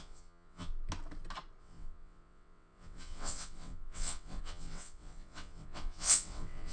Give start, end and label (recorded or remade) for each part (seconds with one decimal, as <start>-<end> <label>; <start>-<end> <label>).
0.0-0.7 remade; 0.7-1.6 recorded; 1.6-6.7 remade